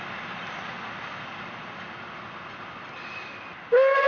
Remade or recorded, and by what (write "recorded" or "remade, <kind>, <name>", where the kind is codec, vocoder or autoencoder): recorded